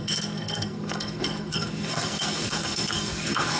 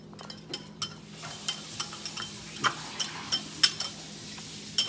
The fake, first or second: first